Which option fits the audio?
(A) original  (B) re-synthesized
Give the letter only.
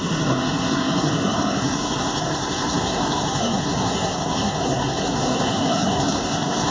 B